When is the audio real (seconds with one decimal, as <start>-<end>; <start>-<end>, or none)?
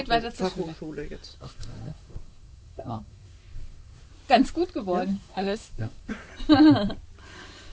0.0-1.3; 4.1-5.1; 6.3-7.7